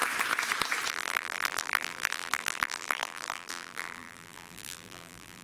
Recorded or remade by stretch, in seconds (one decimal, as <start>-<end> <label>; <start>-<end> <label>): 0.0-0.9 recorded; 0.9-5.4 remade